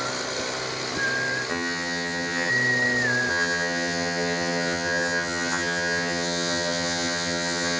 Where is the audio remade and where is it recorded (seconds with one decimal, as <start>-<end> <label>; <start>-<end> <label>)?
0.0-1.5 recorded; 1.5-2.5 remade; 2.5-3.3 recorded; 3.3-7.8 remade